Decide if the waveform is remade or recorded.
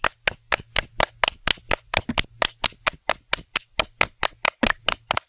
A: recorded